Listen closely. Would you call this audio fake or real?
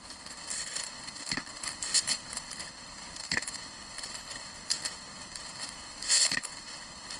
fake